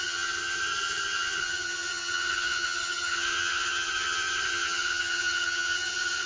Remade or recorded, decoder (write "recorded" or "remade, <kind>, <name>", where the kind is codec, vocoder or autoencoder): remade, vocoder, HiFi-GAN